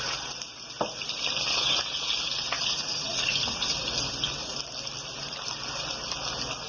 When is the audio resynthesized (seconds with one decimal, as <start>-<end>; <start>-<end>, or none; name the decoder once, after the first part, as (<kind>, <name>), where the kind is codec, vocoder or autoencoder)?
2.6-3.6 (vocoder, Vocos)